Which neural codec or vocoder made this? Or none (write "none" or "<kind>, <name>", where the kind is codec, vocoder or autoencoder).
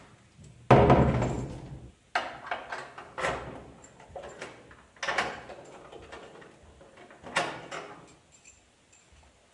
none